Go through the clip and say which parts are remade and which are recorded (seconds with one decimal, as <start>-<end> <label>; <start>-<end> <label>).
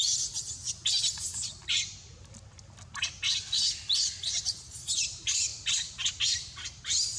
0.0-7.2 recorded